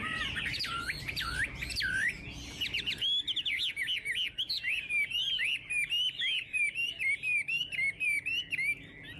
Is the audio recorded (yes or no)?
yes